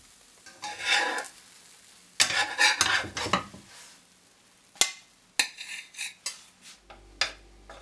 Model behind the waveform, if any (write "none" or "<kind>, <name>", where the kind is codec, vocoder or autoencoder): none